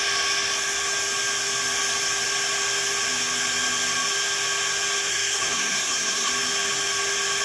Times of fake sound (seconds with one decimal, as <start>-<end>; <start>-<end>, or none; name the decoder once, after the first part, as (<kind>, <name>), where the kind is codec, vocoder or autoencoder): 5.1-6.3 (codec, SNAC)